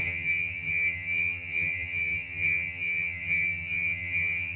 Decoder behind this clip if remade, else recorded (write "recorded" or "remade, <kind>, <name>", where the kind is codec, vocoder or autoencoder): remade, vocoder, HiFi-GAN